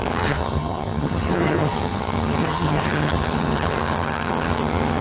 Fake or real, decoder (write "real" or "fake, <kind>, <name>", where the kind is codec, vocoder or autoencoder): fake, vocoder, HiFi-GAN